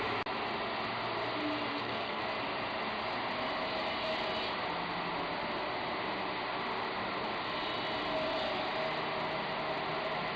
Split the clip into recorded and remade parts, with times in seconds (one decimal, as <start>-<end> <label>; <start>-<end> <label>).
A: 0.0-1.7 recorded; 1.7-2.2 remade; 2.2-10.4 recorded